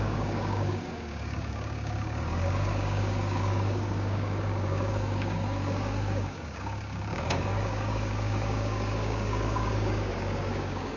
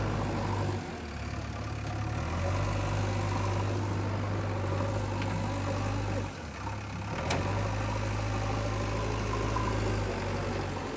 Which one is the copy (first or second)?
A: first